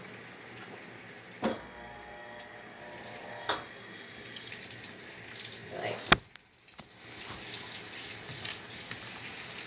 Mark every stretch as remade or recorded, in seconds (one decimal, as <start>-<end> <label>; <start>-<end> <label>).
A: 0.0-1.5 recorded; 1.5-2.8 remade; 2.8-3.3 recorded; 3.3-4.5 remade; 4.5-9.7 recorded